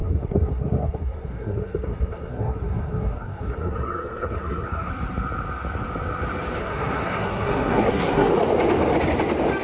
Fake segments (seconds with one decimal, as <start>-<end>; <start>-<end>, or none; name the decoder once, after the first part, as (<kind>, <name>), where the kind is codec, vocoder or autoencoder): 0.0-4.9 (codec, SNAC); 6.6-8.3